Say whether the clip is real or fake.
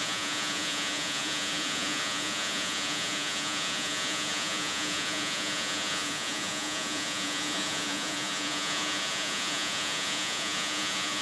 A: fake